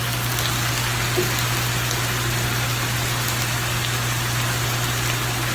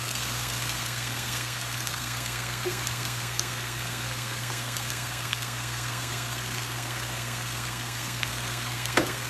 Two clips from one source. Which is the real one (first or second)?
first